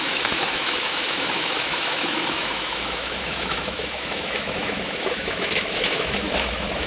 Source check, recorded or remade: remade